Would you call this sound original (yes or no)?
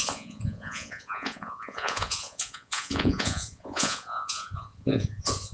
no